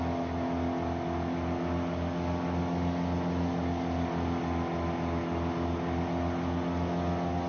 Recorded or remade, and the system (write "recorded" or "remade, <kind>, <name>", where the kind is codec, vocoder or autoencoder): recorded